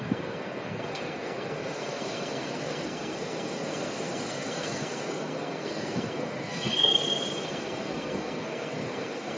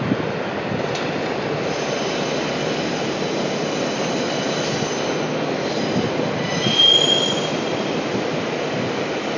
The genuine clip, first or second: second